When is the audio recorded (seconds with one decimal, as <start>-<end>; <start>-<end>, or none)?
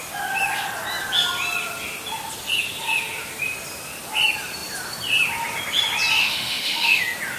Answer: 0.0-6.2; 7.0-7.4